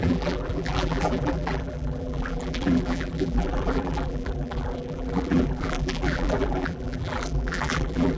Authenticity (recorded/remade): remade